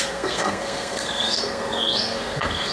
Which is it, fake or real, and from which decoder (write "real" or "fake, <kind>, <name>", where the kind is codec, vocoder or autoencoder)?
fake, codec, SNAC